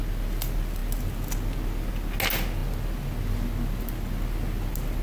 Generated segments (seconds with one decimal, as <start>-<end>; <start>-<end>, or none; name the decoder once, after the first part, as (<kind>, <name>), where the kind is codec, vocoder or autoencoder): none

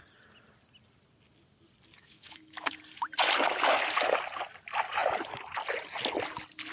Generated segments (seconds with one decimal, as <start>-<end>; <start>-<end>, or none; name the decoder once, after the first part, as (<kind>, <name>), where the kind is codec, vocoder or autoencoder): 2.0-2.8 (autoencoder, DAC-VAE)

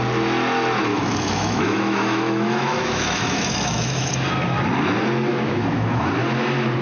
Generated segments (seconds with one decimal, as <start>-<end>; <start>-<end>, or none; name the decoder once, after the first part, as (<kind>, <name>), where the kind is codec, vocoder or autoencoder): 0.9-4.1 (autoencoder, DAC-VAE); 5.3-6.1

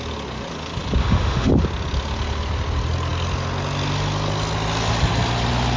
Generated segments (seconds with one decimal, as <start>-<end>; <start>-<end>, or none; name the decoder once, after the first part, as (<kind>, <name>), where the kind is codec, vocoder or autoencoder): 1.0-1.5 (autoencoder, DAC-VAE)